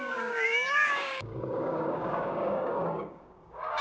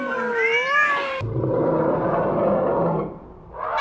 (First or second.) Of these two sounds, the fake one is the first